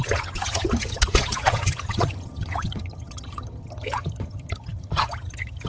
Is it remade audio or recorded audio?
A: remade